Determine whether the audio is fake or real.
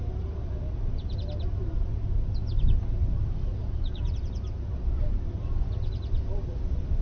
real